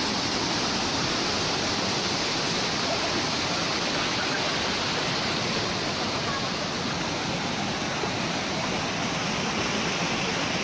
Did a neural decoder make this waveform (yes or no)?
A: no